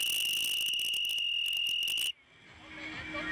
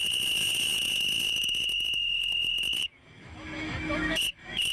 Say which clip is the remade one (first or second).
second